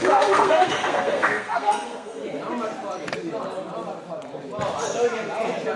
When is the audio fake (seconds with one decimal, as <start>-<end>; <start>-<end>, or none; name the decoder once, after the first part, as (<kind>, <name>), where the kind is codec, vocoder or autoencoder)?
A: 0.0-2.2 (codec, SNAC)